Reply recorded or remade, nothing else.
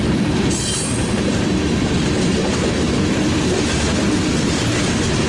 recorded